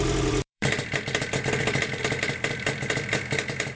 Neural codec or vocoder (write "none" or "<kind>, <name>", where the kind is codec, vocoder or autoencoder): vocoder, BigVGAN v2